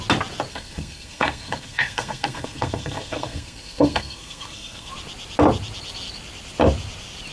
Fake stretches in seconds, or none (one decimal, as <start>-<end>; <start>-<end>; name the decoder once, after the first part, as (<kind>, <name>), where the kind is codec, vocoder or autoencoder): 0.5-4.9 (codec, SNAC)